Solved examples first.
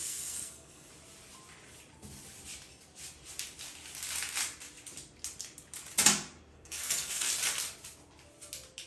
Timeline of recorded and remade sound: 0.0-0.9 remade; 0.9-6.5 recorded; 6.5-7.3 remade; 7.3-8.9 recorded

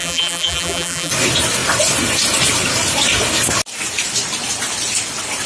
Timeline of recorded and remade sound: 0.0-1.1 remade; 1.1-5.5 recorded